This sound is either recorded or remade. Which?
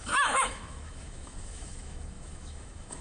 remade